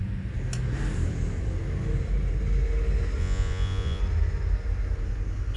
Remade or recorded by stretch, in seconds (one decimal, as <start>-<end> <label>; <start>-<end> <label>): 0.0-3.2 recorded; 3.2-4.0 remade; 4.0-5.6 recorded